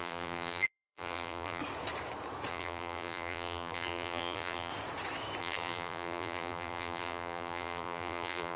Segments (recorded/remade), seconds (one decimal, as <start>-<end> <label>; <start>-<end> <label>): 0.0-1.6 remade; 1.6-2.5 recorded; 2.5-4.7 remade; 4.7-5.4 recorded; 5.4-8.6 remade